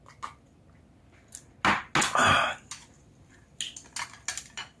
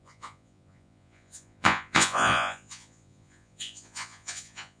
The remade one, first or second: second